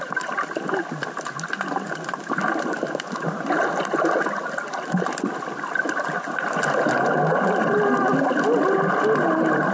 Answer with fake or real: real